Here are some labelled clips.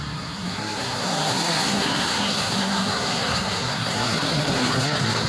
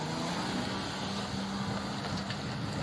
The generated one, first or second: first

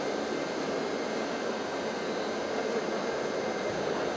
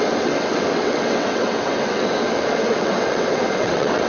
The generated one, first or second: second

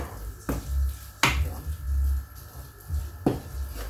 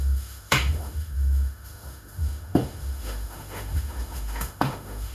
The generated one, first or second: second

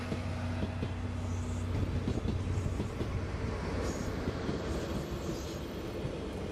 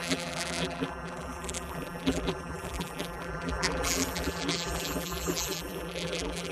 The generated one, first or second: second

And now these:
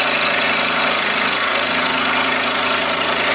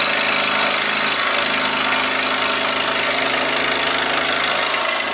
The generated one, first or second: first